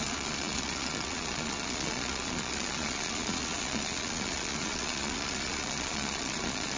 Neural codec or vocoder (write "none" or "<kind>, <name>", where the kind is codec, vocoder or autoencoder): vocoder, Vocos